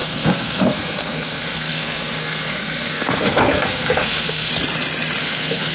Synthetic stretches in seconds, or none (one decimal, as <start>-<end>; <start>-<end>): 0.0-4.5; 5.2-5.7